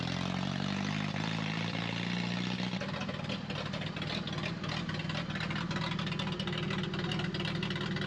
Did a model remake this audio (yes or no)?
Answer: no